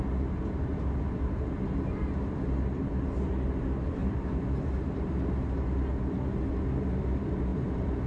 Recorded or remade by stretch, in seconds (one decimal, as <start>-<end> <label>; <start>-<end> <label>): 0.0-4.0 recorded; 4.0-5.1 remade; 5.1-7.5 recorded; 7.5-8.1 remade